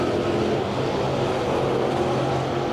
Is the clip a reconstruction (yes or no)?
no